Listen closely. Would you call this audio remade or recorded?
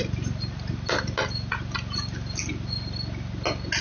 recorded